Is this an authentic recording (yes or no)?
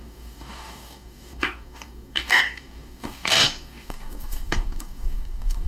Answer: no